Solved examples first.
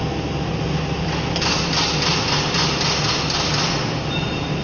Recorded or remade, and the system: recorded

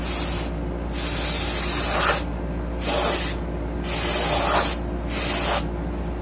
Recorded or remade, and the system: recorded